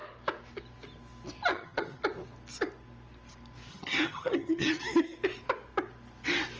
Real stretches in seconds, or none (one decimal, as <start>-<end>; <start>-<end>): 0.0-1.5; 2.0-3.7; 4.8-6.6